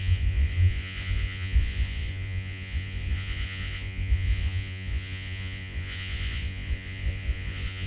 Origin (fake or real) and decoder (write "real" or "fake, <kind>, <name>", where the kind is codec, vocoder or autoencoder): fake, vocoder, Vocos